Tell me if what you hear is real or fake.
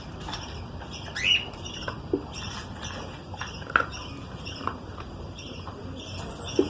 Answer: real